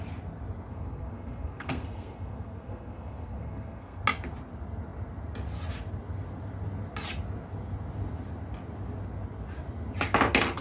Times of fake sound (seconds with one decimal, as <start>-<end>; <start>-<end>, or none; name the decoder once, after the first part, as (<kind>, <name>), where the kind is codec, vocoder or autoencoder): 0.7-4.0 (codec, SNAC)